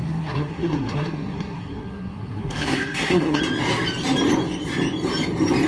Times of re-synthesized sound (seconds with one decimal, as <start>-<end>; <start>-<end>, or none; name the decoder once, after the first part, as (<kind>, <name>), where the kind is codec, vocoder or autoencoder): 0.0-3.4 (codec, SNAC)